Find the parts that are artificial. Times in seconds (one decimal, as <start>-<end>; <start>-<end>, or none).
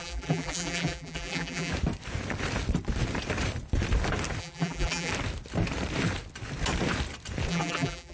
0.0-1.7; 4.4-5.1; 7.5-8.1